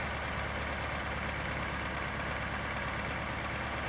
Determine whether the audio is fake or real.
real